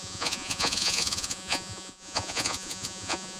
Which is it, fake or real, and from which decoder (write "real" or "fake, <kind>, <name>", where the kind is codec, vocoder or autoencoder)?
fake, vocoder, Vocos